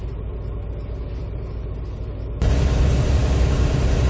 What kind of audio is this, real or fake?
real